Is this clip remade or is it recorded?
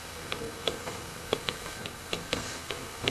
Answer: remade